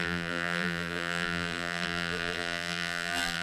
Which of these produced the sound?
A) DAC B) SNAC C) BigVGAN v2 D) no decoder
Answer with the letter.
C